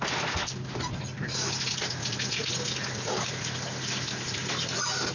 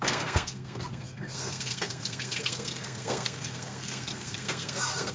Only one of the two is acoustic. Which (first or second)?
first